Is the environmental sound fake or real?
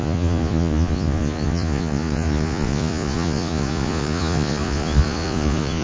fake